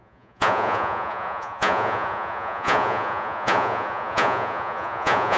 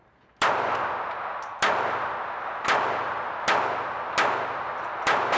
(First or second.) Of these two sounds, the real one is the second